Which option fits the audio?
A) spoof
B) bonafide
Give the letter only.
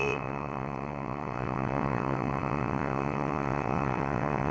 A